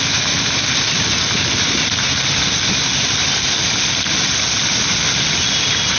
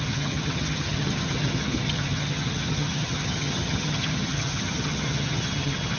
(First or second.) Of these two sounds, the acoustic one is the first